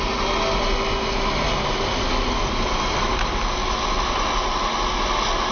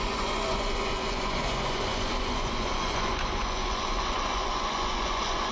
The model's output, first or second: second